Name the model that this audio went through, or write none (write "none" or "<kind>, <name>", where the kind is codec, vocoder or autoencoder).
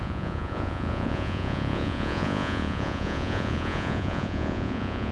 vocoder, Vocos